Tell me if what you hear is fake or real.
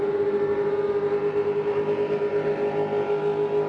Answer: real